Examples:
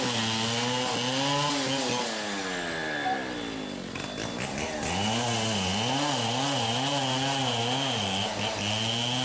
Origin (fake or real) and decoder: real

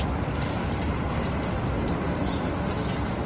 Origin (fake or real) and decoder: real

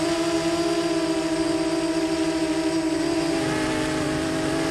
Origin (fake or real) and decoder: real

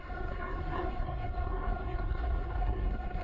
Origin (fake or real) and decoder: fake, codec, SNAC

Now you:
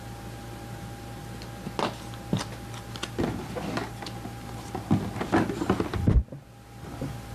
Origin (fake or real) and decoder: real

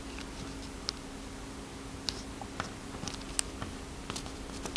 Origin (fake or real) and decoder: real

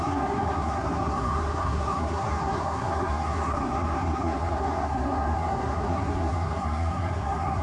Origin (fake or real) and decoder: fake, codec, SNAC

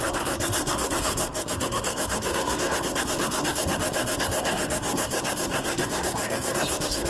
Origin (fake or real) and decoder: fake, codec, SNAC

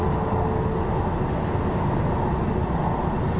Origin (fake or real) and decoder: real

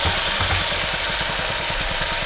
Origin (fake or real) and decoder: real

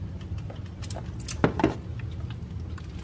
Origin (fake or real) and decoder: real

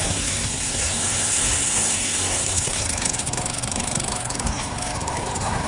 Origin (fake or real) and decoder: fake, codec, SNAC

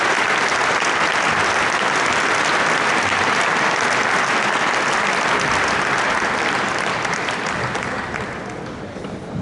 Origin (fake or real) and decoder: real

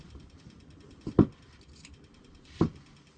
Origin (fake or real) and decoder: real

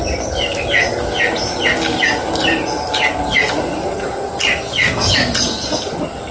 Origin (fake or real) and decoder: real